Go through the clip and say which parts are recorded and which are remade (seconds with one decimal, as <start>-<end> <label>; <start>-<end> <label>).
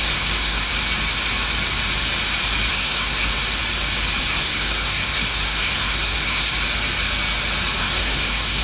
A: 0.0-0.7 remade; 0.7-2.7 recorded; 2.7-3.3 remade; 3.3-4.2 recorded; 4.2-6.5 remade; 6.5-7.8 recorded; 7.8-8.6 remade